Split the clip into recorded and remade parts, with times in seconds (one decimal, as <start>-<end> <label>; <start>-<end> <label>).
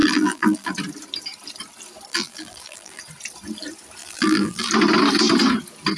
0.0-0.7 remade; 0.7-2.1 recorded; 2.1-3.0 remade; 3.0-4.0 recorded; 4.0-4.7 remade; 4.7-6.0 recorded